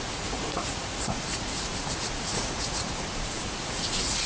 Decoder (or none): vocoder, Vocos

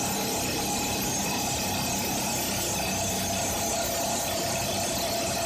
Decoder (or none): none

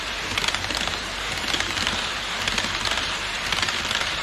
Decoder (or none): vocoder, BigVGAN v2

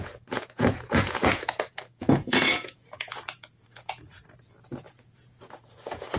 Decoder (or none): vocoder, Vocos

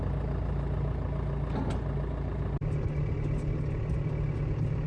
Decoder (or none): none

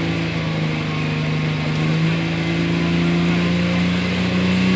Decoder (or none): none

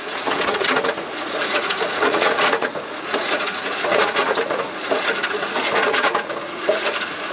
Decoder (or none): vocoder, Vocos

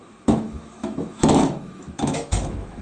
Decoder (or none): autoencoder, DAC-VAE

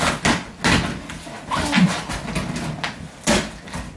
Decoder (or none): none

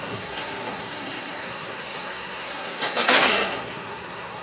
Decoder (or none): codec, SNAC